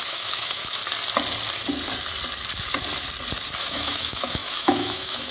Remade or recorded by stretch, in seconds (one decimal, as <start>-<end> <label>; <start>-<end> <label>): 0.0-0.8 remade; 0.8-3.6 recorded; 3.6-5.3 remade